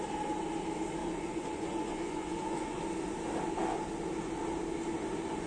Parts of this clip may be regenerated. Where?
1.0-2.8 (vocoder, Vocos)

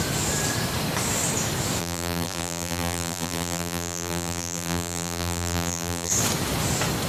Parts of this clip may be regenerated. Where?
1.8-6.1 (vocoder, BigVGAN v2)